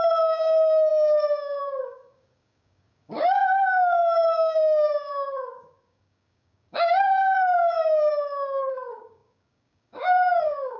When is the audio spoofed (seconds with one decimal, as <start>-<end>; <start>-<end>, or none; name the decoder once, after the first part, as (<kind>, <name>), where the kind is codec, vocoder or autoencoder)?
0.0-10.8 (codec, DAC)